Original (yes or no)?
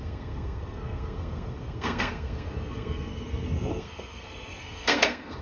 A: no